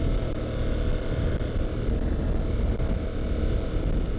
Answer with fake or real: real